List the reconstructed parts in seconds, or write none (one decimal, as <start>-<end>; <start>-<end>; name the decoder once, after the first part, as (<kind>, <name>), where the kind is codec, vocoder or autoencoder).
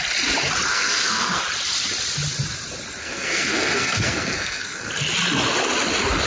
0.7-1.4 (codec, SNAC); 3.0-4.9